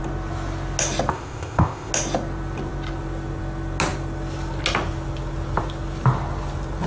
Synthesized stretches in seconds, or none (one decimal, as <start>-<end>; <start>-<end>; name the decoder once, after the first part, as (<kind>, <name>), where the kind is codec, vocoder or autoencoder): 1.1-1.9 (codec, ZipCodec)